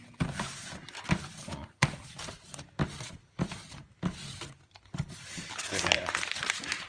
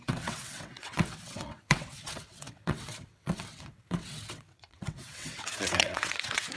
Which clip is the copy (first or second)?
second